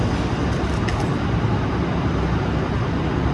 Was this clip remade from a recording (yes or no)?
no